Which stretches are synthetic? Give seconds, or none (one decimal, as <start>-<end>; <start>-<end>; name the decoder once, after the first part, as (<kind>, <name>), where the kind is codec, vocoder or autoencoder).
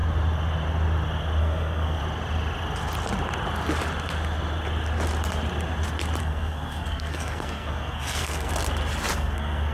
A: 1.4-2.0 (codec, SNAC); 6.2-8.5; 9.1-9.7